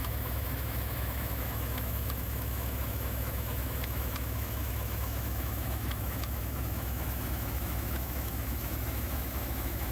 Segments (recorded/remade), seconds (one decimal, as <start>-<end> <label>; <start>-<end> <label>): 0.0-9.9 remade